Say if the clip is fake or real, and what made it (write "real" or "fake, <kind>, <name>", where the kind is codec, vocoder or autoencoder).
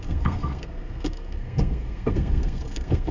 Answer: fake, codec, SNAC